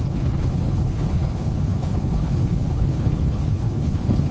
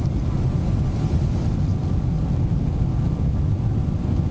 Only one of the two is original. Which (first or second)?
second